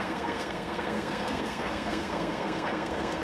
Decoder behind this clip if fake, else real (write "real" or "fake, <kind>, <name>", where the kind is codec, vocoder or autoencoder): fake, codec, SNAC